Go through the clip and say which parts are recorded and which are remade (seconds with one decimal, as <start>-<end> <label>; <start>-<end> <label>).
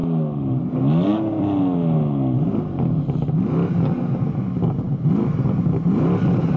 0.0-6.6 recorded